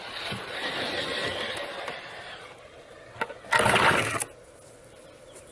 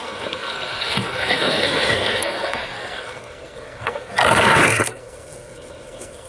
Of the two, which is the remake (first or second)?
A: second